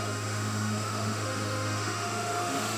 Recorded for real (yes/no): no